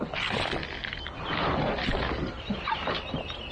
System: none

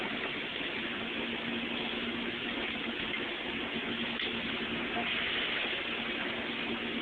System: none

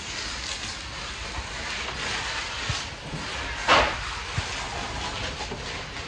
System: none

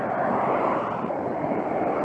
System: vocoder, BigVGAN v2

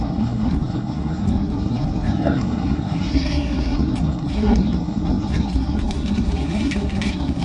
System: codec, SNAC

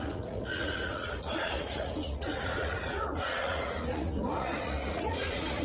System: vocoder, Vocos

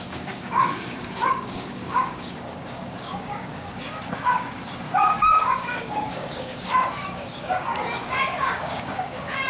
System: codec, DAC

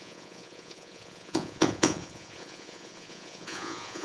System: vocoder, Vocos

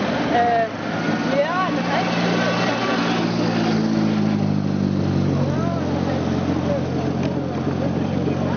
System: none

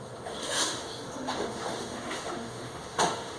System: autoencoder, DAC-VAE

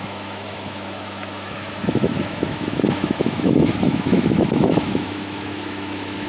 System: autoencoder, DAC-VAE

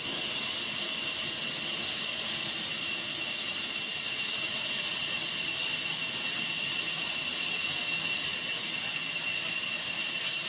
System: none